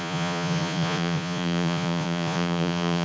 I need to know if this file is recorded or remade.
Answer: remade